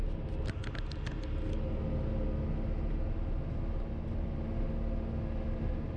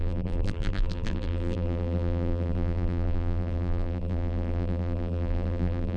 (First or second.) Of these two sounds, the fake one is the second